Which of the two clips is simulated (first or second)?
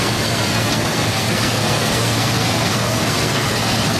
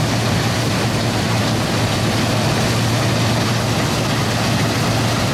first